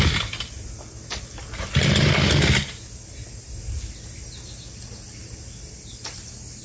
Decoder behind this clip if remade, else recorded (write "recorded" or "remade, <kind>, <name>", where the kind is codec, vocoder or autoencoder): recorded